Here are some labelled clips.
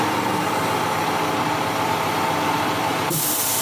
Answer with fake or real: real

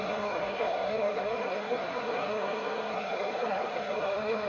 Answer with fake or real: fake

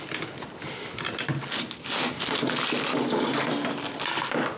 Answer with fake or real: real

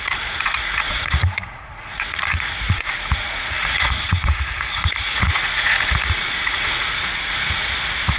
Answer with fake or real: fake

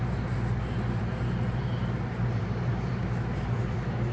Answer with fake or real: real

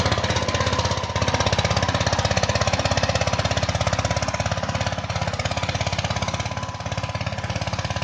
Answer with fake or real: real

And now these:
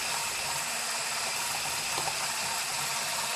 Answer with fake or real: real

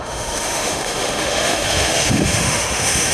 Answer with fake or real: fake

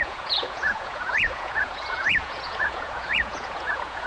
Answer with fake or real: fake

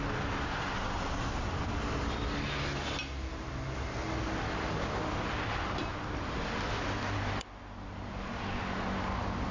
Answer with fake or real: real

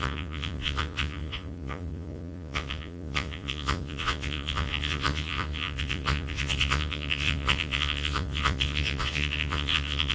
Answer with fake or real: fake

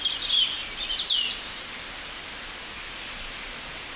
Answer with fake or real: real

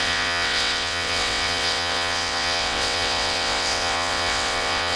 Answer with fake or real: fake